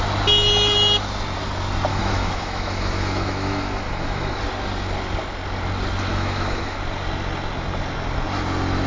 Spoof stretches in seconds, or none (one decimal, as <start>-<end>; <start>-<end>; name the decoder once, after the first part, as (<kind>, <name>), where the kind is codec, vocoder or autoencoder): 1.9-4.4 (autoencoder, DAC-VAE); 6.1-6.8